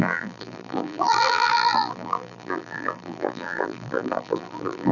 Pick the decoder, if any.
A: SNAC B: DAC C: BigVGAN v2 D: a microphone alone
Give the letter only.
C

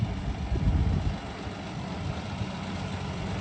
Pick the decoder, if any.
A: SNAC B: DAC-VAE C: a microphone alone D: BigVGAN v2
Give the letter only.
D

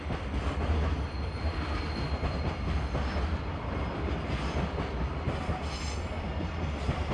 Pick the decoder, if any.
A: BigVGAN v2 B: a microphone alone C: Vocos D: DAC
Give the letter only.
B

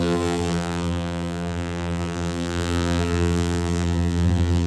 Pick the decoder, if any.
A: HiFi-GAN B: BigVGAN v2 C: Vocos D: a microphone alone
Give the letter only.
B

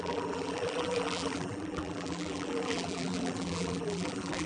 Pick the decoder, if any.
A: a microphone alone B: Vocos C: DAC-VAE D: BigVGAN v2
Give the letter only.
D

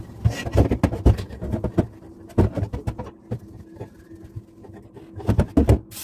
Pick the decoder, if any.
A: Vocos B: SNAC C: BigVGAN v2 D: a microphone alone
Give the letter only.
D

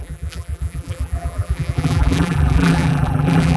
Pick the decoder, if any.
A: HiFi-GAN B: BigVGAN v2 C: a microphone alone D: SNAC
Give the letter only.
B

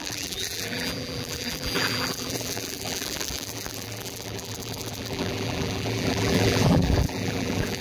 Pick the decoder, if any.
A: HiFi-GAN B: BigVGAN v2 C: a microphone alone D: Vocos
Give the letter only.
B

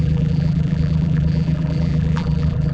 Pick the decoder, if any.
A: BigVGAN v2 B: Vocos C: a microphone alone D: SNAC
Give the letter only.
A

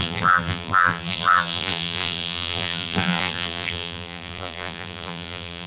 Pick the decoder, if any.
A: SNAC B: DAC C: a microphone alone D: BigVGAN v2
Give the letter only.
D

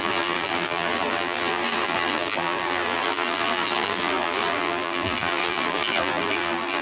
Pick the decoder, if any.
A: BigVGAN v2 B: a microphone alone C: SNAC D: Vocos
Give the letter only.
A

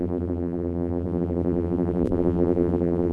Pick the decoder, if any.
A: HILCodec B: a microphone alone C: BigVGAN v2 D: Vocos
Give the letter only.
C